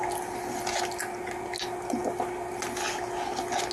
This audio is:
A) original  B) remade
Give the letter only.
A